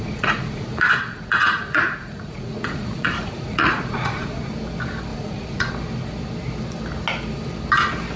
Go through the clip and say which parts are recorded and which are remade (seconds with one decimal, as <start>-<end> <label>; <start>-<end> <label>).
0.0-4.5 remade; 4.5-5.1 recorded; 5.1-5.7 remade; 5.7-8.2 recorded